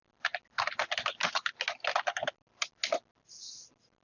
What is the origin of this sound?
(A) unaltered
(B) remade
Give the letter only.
A